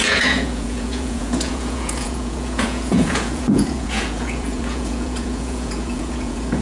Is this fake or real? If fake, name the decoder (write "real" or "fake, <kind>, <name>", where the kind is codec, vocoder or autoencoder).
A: fake, vocoder, Vocos